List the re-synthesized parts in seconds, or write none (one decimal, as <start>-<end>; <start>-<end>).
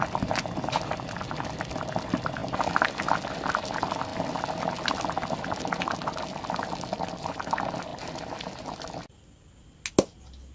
none